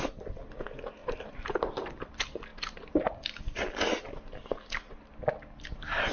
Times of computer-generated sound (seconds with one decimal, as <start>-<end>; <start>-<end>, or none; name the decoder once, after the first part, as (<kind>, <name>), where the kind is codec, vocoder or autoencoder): 1.0-2.1 (vocoder, BigVGAN v2)